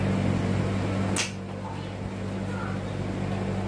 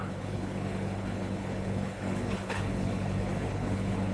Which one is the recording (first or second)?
first